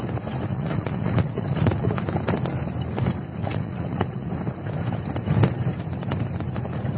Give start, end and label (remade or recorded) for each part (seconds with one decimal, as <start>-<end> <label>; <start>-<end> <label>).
0.0-0.5 recorded; 0.5-2.0 remade; 2.0-3.4 recorded; 3.4-4.3 remade; 4.3-7.0 recorded